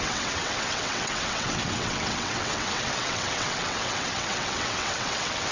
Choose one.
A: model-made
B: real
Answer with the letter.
A